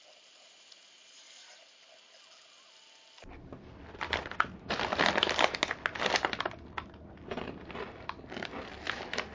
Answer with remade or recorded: recorded